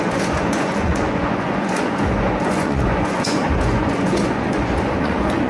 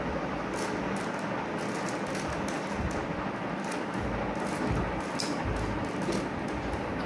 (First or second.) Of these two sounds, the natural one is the second